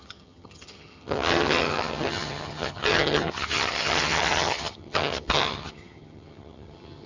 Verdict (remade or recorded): remade